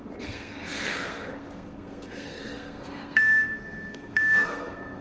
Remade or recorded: remade